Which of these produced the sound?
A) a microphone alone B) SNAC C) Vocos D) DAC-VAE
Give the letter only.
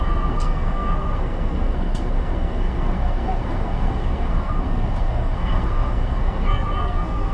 B